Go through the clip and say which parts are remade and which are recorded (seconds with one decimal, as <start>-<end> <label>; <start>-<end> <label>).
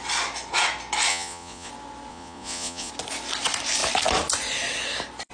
0.0-1.1 recorded; 1.1-1.7 remade; 1.7-2.1 recorded; 2.1-2.9 remade; 2.9-5.3 recorded